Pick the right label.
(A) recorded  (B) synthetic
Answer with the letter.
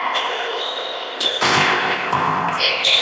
B